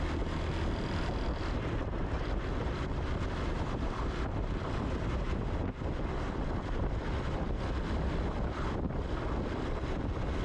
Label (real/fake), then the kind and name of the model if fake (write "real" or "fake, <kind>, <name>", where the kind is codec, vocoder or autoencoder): fake, vocoder, BigVGAN v2